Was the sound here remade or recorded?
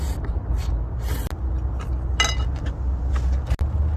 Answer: recorded